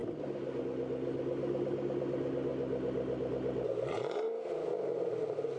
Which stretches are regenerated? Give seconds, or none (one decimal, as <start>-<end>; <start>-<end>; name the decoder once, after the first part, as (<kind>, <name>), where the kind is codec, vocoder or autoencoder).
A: none